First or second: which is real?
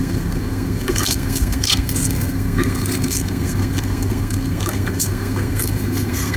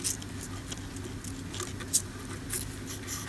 second